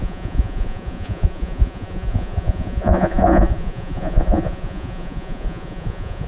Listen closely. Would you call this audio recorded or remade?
remade